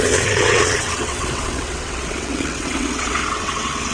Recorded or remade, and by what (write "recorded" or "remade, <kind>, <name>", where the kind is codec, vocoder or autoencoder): remade, vocoder, WaveNeXt